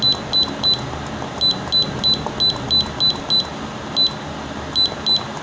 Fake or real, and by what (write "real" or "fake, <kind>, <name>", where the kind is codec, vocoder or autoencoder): real